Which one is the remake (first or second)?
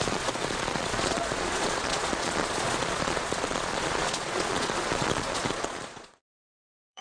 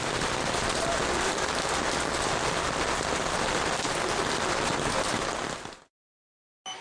first